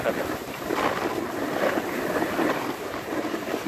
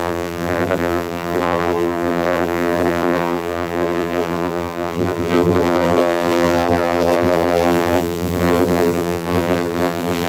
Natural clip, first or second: first